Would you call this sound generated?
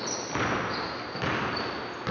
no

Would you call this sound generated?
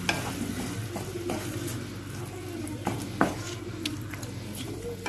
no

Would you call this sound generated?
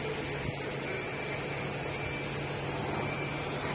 no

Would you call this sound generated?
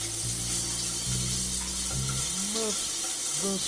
no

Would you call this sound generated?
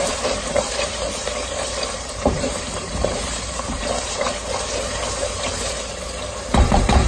yes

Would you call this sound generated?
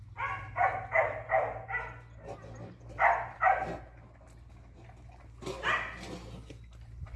no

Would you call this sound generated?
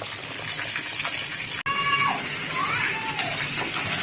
no